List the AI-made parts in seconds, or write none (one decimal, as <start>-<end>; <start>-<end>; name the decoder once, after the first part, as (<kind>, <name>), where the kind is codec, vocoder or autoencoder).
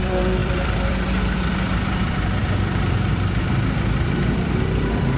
0.0-5.2 (vocoder, BigVGAN v2)